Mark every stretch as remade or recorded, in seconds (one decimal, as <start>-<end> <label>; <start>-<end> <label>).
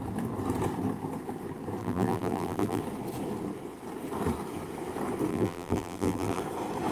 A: 0.0-1.8 recorded; 1.8-2.8 remade; 2.8-5.3 recorded; 5.3-6.4 remade; 6.4-6.9 recorded